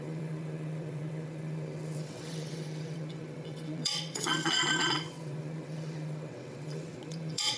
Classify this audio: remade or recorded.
remade